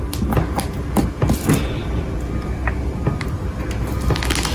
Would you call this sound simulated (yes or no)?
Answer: no